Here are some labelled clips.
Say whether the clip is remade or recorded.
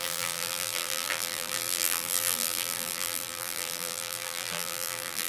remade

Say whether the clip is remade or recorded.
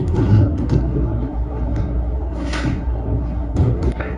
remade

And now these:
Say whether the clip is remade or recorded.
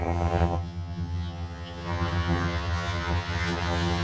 remade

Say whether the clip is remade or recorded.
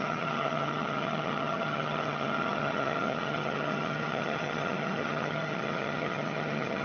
remade